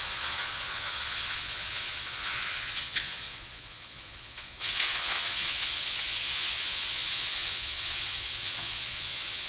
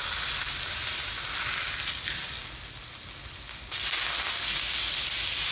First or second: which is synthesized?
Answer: first